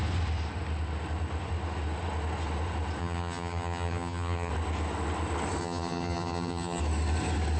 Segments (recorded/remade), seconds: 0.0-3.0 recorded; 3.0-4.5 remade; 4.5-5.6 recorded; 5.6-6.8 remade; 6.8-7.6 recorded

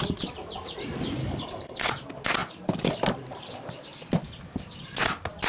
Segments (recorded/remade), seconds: 0.0-1.2 recorded; 1.2-1.9 remade; 1.9-5.5 recorded

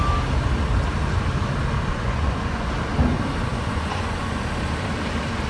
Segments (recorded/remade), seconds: 0.0-1.9 recorded; 1.9-2.7 remade; 2.7-3.5 recorded; 3.5-4.4 remade; 4.4-5.5 recorded

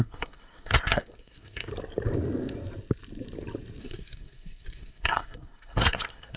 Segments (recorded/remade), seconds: 0.0-1.7 remade; 1.7-3.8 recorded; 3.8-6.4 remade

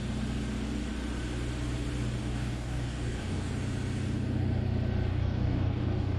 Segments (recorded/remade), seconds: 0.0-2.2 recorded; 2.2-3.5 remade; 3.5-5.1 recorded; 5.1-6.2 remade